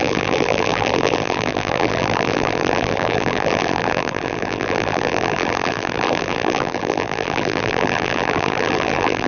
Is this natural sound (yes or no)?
no